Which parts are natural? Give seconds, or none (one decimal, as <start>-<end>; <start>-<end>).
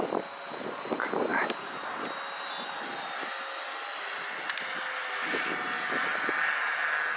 0.0-7.2